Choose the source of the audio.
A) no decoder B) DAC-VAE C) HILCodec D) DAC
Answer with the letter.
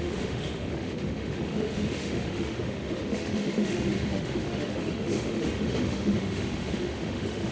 B